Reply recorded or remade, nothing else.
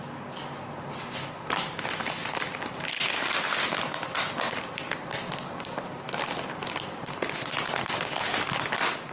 recorded